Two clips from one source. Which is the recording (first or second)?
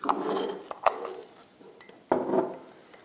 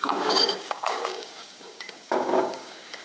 first